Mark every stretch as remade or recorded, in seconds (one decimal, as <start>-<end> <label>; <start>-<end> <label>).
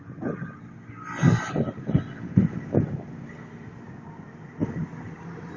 0.0-4.6 recorded; 4.6-5.6 remade